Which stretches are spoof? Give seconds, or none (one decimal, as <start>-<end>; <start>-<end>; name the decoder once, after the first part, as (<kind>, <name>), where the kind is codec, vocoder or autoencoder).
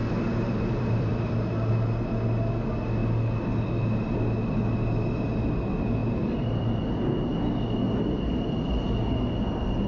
0.0-1.7 (vocoder, BigVGAN v2); 6.0-6.9